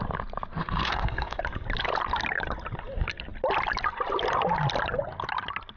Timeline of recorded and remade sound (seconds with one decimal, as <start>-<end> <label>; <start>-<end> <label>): 0.0-0.6 recorded; 0.6-1.4 remade; 1.4-5.8 recorded